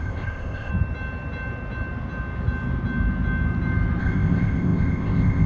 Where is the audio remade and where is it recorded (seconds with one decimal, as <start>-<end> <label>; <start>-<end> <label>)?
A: 0.0-0.7 remade; 0.7-4.0 recorded; 4.0-5.5 remade